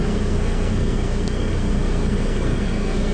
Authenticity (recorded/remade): remade